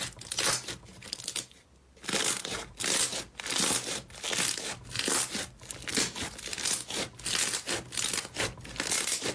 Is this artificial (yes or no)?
no